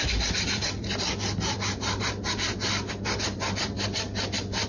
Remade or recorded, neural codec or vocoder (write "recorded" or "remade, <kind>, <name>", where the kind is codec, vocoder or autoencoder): remade, vocoder, BigVGAN v2